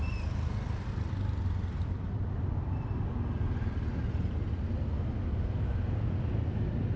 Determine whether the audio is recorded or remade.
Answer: recorded